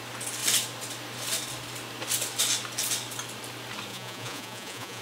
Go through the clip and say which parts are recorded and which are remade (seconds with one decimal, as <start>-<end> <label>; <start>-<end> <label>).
0.0-3.9 recorded; 3.9-5.0 remade